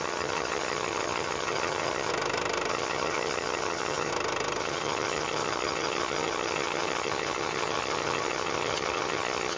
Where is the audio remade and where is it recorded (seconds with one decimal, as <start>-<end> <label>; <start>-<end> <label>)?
0.0-2.1 remade; 2.1-2.7 recorded; 2.7-4.1 remade; 4.1-4.6 recorded; 4.6-9.6 remade